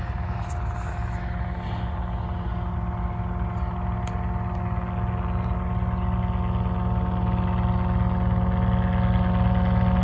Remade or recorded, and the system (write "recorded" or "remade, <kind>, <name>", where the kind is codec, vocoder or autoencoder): recorded